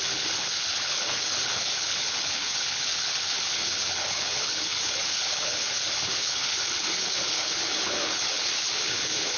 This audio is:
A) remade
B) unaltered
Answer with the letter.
A